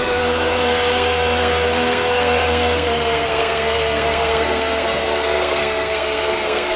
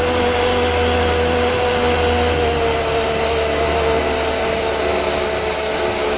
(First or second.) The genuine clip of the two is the second